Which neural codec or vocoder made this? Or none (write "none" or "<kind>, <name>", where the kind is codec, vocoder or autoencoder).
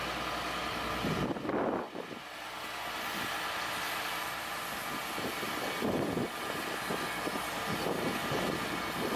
none